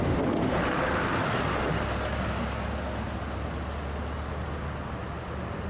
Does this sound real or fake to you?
real